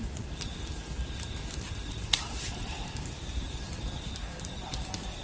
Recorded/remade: recorded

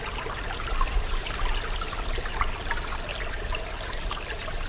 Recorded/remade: recorded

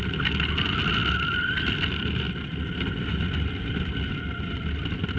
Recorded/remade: recorded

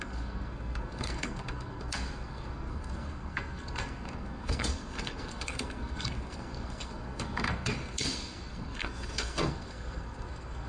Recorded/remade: remade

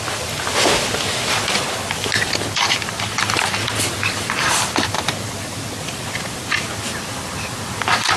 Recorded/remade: remade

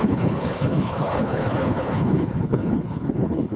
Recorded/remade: remade